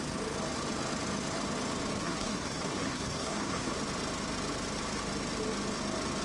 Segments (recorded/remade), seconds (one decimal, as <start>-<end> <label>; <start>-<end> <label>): 0.0-2.0 recorded; 2.0-3.7 remade; 3.7-6.2 recorded